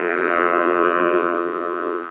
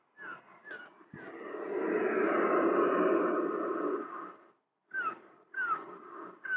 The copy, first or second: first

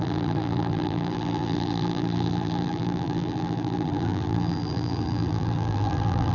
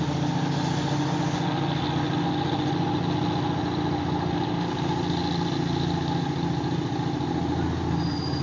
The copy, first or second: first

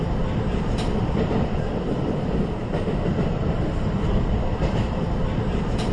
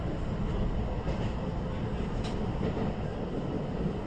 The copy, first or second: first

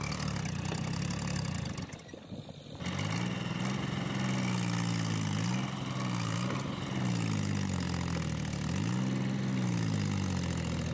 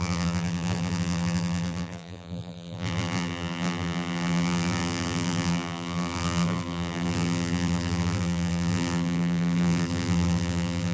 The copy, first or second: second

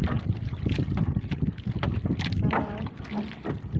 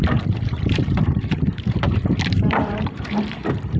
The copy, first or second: second